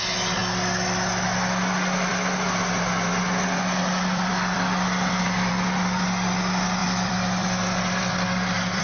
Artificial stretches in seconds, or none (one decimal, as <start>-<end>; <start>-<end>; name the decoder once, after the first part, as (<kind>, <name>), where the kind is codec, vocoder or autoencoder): none